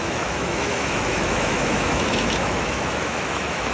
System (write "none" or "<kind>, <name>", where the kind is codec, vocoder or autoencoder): autoencoder, DAC-VAE